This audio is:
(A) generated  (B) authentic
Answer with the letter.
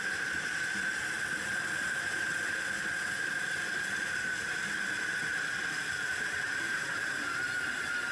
A